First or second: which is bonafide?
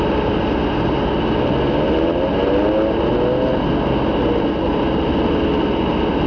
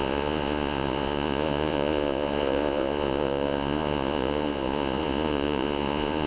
first